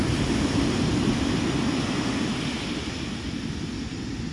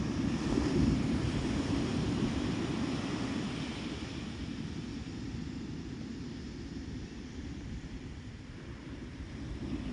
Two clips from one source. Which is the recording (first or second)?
first